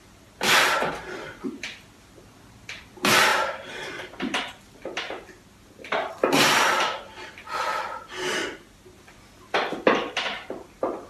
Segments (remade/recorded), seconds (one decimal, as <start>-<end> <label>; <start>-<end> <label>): 0.0-11.1 recorded